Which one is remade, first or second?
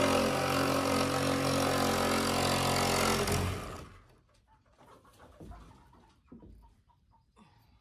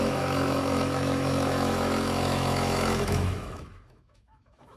second